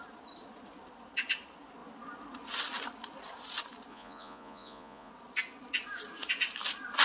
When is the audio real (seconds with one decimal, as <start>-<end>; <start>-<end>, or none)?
0.0-3.9; 5.1-7.0